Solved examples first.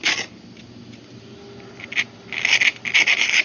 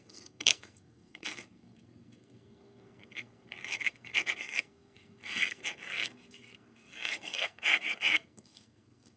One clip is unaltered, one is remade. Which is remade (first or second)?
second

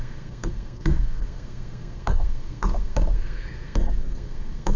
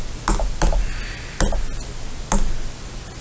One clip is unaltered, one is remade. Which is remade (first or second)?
first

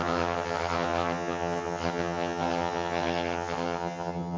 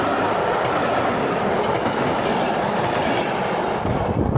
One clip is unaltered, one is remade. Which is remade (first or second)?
first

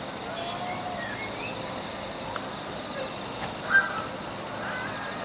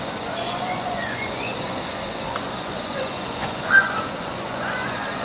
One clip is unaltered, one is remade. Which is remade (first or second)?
second